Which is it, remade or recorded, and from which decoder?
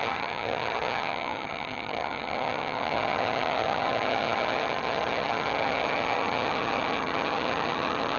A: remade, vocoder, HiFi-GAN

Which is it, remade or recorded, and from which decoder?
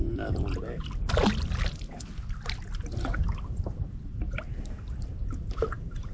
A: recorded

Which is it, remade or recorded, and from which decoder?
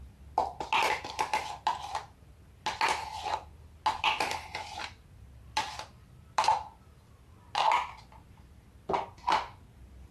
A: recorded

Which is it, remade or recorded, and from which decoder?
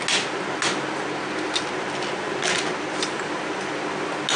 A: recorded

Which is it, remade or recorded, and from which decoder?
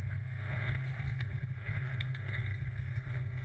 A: remade, codec, SNAC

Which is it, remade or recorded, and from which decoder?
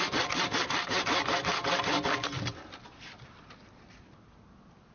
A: recorded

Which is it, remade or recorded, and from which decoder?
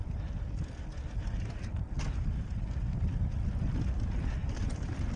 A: recorded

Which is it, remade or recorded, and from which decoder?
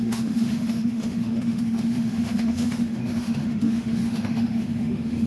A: remade, autoencoder, DAC-VAE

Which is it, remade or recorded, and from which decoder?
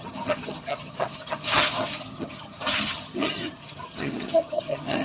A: remade, vocoder, HiFi-GAN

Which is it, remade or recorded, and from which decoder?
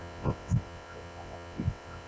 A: remade, vocoder, WaveNeXt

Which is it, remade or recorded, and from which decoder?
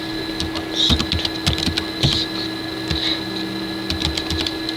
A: recorded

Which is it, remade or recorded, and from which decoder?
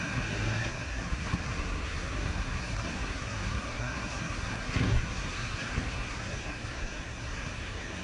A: remade, codec, SNAC